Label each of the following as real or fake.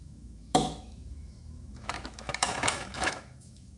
fake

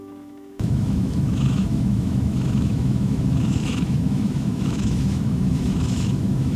fake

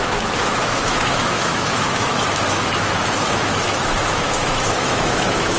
fake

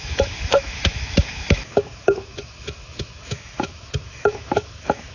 fake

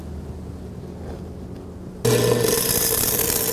real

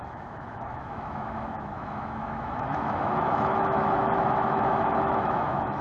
fake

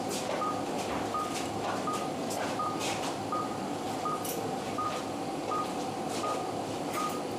real